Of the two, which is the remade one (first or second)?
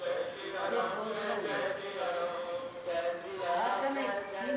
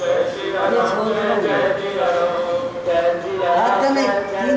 first